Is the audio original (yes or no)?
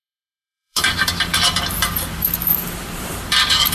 no